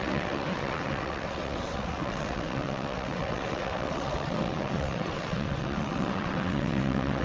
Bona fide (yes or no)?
no